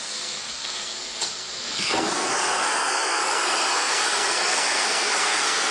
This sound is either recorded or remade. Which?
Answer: remade